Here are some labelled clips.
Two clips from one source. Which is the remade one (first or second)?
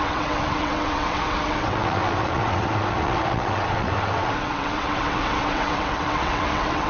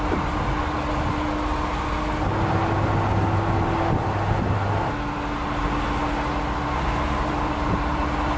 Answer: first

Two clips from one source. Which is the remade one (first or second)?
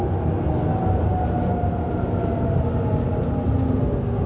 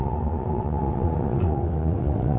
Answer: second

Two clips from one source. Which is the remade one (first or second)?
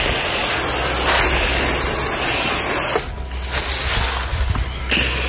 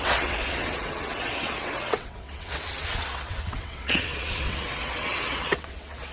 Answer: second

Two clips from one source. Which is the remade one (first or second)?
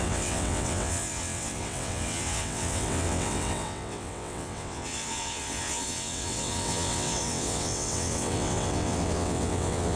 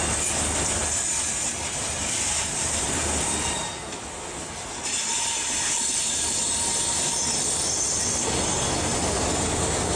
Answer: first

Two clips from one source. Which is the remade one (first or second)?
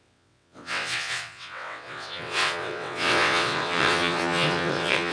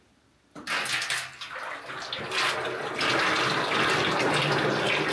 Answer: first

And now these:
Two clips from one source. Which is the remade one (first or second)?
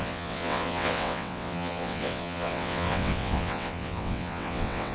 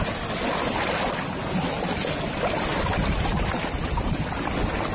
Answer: first